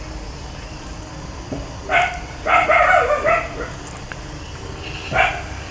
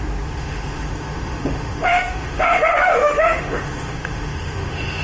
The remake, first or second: second